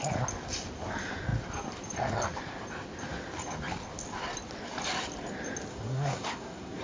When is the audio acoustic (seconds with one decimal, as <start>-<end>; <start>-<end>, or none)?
0.0-5.7